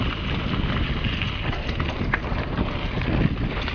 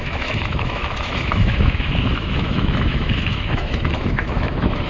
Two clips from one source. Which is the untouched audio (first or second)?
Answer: first